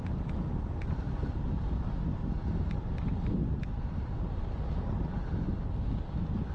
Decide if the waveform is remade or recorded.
recorded